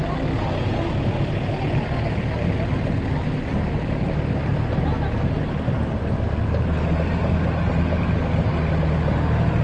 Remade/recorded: recorded